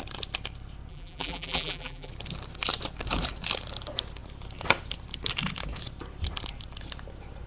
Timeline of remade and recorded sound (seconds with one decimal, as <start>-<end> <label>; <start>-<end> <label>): 0.0-0.9 recorded; 0.9-2.1 remade; 2.1-7.5 recorded